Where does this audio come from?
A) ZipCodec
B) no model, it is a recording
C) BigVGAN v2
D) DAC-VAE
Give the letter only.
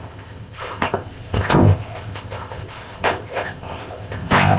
A